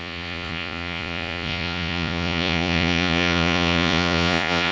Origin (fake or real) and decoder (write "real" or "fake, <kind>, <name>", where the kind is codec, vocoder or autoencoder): fake, vocoder, Vocos